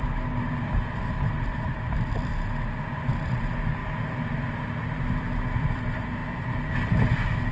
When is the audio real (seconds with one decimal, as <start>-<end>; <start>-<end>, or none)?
2.3-3.1